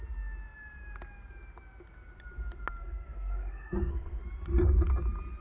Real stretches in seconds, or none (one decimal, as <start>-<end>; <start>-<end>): 0.0-2.8; 4.2-5.4